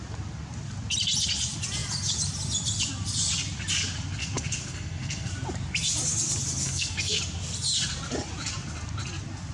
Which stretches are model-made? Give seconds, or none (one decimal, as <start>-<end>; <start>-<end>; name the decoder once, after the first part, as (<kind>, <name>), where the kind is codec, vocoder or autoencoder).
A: 4.2-5.3 (codec, SNAC); 6.6-7.2